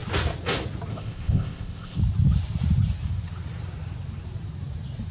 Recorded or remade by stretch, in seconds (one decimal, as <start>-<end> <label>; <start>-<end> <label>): 0.0-0.9 recorded; 0.9-2.0 remade; 2.0-5.1 recorded